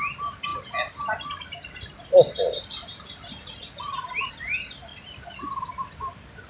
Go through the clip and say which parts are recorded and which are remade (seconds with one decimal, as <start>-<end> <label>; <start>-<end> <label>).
0.0-6.5 recorded